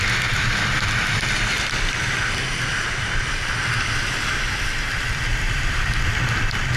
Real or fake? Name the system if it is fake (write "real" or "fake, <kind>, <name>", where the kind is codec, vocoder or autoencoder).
real